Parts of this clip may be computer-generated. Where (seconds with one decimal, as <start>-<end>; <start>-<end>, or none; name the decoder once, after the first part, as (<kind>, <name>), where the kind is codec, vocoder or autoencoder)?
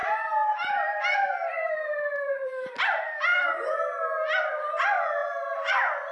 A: 0.7-6.1 (vocoder, BigVGAN v2)